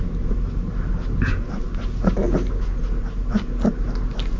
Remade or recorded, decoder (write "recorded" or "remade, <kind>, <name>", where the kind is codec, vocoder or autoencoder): recorded